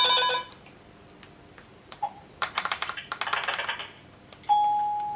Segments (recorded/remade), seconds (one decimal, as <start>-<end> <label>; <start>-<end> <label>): 0.0-1.7 recorded; 1.7-3.0 remade; 3.0-5.2 recorded